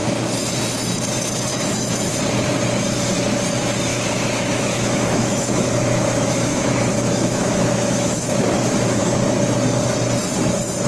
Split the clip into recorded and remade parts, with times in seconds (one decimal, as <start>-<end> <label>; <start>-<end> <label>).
0.0-1.5 recorded; 1.5-2.1 remade; 2.1-3.9 recorded; 3.9-9.0 remade; 9.0-10.9 recorded